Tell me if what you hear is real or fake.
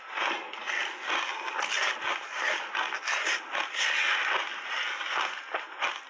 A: real